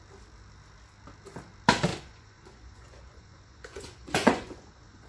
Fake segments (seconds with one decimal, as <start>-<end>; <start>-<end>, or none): 1.9-5.1